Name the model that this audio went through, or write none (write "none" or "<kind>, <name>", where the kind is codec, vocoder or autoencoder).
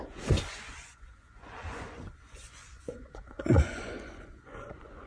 vocoder, Vocos